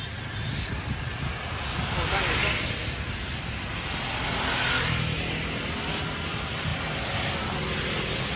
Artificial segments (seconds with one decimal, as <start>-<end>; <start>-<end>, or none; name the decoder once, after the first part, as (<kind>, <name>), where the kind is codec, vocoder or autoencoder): none